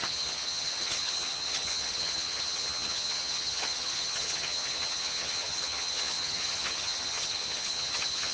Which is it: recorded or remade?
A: remade